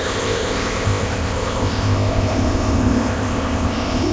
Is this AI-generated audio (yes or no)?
yes